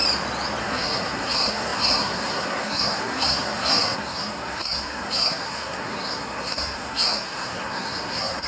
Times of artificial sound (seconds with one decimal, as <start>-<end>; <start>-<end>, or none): 0.6-8.5